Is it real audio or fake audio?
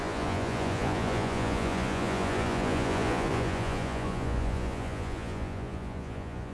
fake